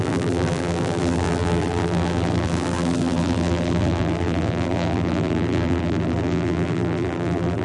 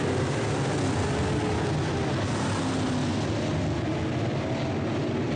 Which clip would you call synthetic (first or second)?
first